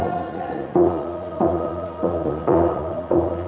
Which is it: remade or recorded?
remade